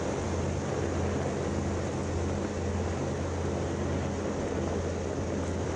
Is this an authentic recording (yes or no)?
yes